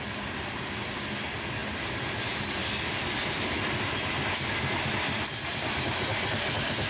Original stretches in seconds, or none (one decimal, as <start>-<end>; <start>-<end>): 0.0-6.9